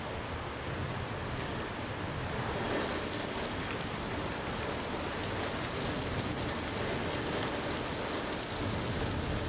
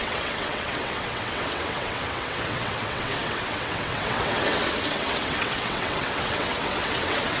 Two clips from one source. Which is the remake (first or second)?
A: second